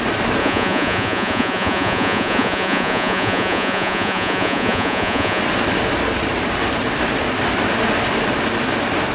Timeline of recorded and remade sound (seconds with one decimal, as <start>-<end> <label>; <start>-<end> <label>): 0.0-0.4 recorded; 0.4-5.4 remade; 5.4-9.1 recorded